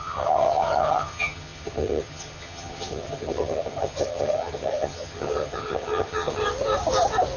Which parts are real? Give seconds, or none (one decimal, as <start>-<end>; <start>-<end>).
6.4-7.4